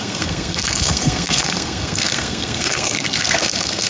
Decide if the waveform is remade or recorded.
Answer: remade